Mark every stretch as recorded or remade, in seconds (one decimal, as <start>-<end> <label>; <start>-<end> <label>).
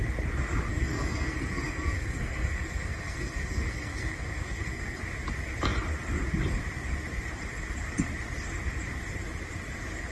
0.0-0.7 recorded; 0.7-5.0 remade; 5.0-10.1 recorded